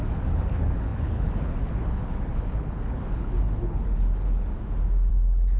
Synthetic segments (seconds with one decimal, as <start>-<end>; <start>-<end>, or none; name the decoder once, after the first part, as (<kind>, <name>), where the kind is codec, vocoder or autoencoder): 0.0-4.5 (codec, HILCodec); 5.1-5.6